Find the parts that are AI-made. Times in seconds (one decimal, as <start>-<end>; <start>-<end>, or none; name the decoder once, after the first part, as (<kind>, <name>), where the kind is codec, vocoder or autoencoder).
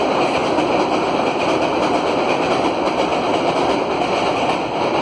none